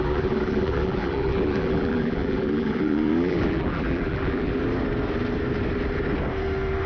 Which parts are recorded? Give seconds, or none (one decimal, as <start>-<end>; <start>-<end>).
4.6-6.9